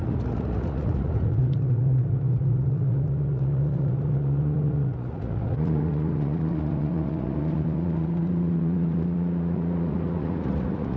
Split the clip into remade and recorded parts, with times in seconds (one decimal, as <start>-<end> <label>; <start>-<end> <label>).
0.0-11.0 remade